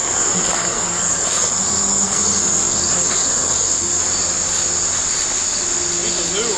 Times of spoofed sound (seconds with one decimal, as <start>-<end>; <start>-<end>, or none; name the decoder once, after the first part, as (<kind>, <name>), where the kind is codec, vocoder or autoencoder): 0.0-4.0 (codec, SNAC)